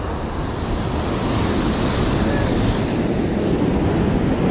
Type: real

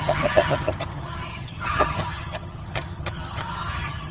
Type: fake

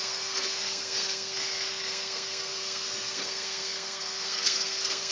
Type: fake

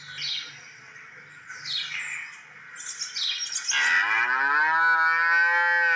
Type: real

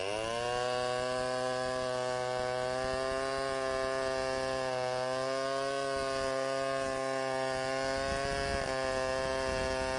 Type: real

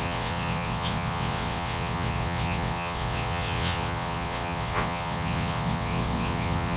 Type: fake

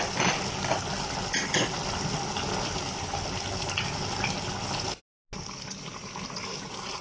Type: real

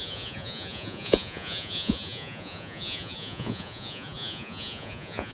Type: fake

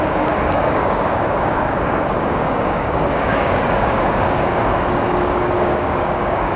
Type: fake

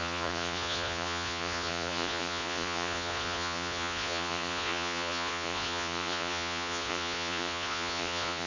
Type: fake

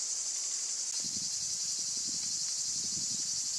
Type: real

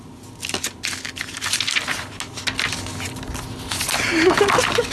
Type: real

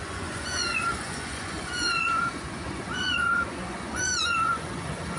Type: fake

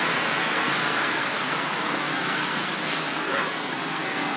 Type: fake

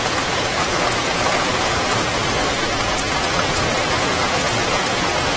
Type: fake